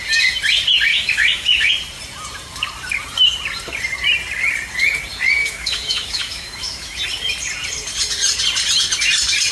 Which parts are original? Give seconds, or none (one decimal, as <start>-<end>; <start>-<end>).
0.0-0.9; 1.7-5.4; 7.0-9.5